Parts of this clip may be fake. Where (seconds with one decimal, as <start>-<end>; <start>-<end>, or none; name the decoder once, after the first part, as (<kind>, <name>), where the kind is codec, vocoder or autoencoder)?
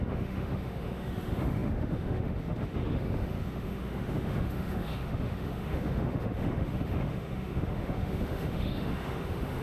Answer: 0.0-9.6 (autoencoder, DAC-VAE)